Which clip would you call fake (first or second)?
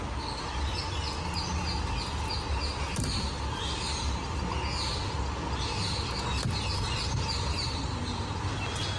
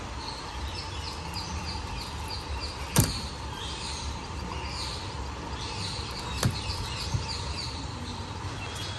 second